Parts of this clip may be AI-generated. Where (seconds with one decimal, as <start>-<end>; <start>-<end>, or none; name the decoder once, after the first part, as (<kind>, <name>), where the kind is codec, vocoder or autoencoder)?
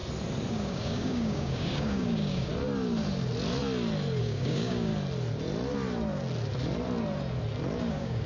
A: 0.5-2.5 (codec, DAC); 4.2-4.9; 7.9-8.3